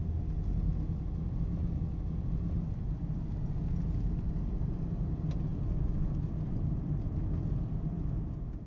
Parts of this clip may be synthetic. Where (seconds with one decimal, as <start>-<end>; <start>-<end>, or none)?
none